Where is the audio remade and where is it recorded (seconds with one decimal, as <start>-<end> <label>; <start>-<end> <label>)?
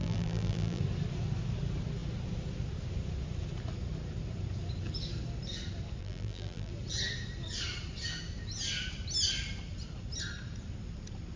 0.0-0.8 remade; 0.8-6.0 recorded; 6.0-6.7 remade; 6.7-11.4 recorded